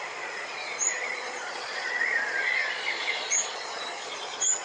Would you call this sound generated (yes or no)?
yes